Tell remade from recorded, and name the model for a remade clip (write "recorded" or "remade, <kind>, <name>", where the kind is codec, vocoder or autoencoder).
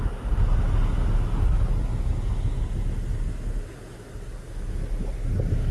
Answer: recorded